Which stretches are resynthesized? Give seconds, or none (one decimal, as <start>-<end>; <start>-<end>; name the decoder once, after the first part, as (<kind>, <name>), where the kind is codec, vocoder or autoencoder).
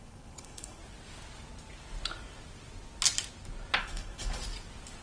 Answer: 0.0-0.8 (codec, HILCodec); 3.8-4.4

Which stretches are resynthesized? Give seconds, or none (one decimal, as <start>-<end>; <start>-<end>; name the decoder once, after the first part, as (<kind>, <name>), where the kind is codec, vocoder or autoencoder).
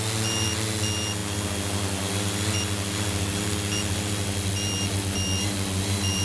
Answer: none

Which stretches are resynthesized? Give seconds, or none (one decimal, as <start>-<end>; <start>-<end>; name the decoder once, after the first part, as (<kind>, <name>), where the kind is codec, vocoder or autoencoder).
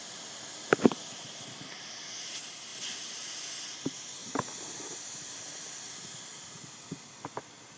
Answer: none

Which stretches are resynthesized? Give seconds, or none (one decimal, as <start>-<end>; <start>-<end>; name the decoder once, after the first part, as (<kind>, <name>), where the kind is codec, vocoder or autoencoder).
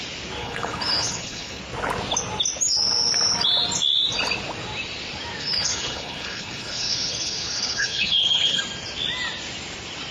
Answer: 0.4-1.6 (codec, HILCodec); 5.4-8.6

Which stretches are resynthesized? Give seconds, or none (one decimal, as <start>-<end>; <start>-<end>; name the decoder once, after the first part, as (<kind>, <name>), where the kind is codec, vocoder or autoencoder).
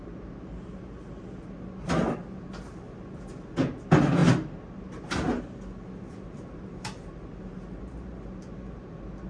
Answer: none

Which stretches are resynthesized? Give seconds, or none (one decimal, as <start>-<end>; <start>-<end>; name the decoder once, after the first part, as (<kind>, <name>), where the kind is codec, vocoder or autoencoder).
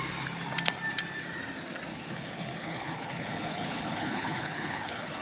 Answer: 1.9-5.2 (codec, HILCodec)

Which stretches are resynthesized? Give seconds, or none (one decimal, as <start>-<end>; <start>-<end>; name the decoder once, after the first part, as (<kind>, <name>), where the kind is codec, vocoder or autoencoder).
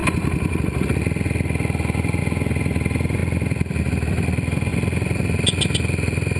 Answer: none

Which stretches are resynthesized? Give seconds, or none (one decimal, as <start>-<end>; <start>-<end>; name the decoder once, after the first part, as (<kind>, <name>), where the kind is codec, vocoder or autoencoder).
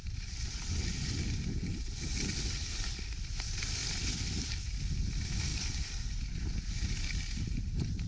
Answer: none